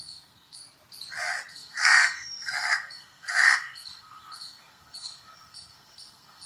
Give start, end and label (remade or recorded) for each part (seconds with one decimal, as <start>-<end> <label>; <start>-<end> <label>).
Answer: 0.0-0.6 remade; 0.6-1.5 recorded; 1.5-6.5 remade